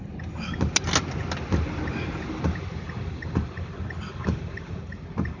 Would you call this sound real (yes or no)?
yes